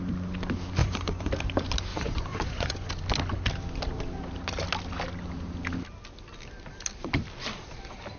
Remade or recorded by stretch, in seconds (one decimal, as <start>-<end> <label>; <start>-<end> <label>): 0.0-0.8 recorded; 0.8-1.3 remade; 1.3-1.9 recorded; 1.9-2.9 remade; 2.9-8.2 recorded